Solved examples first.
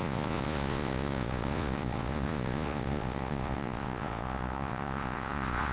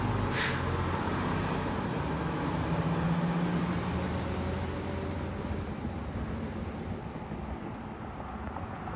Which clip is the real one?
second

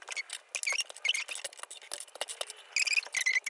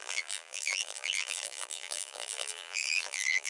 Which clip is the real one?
first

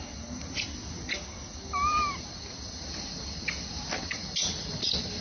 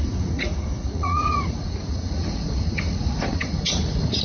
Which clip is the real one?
first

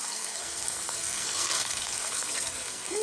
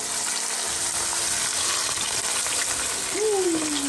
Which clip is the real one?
second